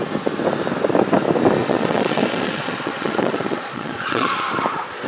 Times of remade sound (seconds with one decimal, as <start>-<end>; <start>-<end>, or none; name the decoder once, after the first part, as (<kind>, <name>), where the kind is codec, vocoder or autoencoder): 1.6-4.4 (vocoder, Vocos)